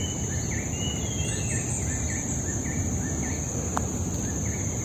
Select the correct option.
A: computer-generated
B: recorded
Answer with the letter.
B